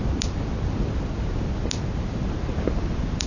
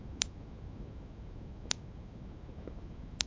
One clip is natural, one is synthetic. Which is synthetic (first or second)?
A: second